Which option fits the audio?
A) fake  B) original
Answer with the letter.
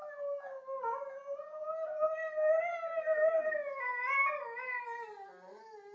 B